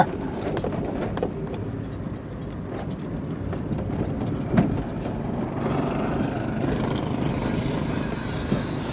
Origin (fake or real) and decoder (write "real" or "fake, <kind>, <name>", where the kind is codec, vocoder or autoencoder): fake, vocoder, BigVGAN v2